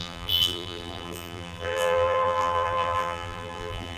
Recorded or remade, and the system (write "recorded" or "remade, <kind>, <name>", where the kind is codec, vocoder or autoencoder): remade, vocoder, BigVGAN v2